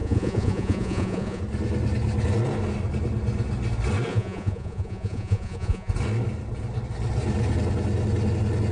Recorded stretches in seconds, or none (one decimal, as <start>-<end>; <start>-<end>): 1.4-4.1; 5.9-8.7